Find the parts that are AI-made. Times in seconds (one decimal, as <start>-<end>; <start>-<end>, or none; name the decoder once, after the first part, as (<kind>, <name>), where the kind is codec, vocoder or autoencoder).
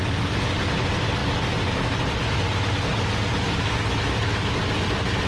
none